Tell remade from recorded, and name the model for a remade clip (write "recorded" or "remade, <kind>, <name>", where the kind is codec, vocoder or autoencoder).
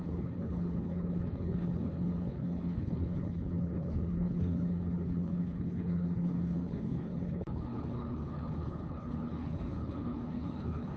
remade, codec, HILCodec